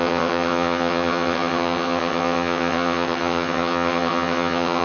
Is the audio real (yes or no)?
no